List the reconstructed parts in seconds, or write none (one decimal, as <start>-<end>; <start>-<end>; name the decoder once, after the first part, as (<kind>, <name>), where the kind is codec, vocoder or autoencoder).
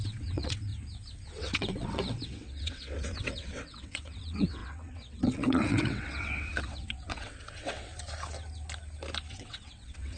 0.0-0.7 (vocoder, WaveNeXt); 1.4-7.9; 9.3-10.2